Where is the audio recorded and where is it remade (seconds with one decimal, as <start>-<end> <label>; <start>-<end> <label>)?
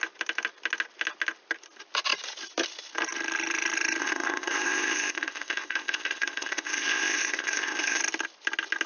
0.0-4.0 recorded; 4.0-8.0 remade; 8.0-8.9 recorded